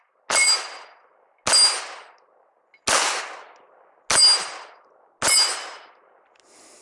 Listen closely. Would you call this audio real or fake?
real